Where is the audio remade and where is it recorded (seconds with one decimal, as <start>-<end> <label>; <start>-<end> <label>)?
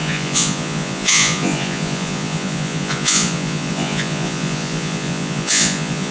0.0-6.1 remade